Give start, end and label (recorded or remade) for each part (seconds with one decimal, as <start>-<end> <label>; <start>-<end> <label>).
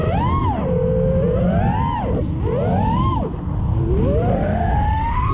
0.0-4.3 recorded; 4.3-5.3 remade